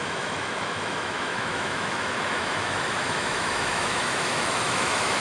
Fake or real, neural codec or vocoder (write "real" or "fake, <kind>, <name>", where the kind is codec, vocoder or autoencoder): fake, autoencoder, DAC-VAE